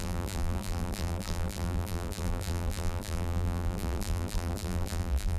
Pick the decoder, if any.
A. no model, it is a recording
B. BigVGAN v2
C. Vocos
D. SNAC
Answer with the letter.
B